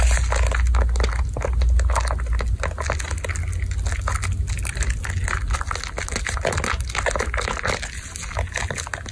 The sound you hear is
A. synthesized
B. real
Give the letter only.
B